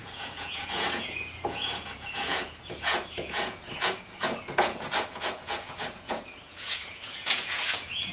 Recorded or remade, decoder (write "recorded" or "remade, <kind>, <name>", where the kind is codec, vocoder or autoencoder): remade, vocoder, Vocos